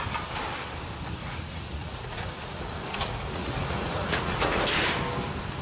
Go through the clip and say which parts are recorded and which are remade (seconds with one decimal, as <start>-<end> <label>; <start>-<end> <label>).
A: 0.0-1.2 recorded; 1.2-4.6 remade; 4.6-5.6 recorded